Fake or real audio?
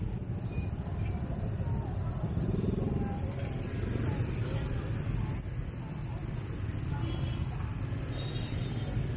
real